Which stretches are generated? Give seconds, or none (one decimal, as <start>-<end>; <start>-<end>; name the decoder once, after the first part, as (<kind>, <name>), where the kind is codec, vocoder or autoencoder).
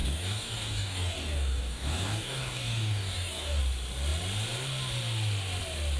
0.0-3.6 (codec, DAC)